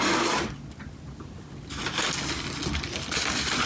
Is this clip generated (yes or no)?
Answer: no